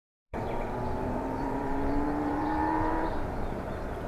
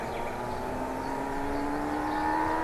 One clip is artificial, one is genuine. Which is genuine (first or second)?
second